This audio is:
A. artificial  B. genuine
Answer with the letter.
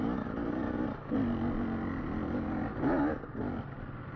B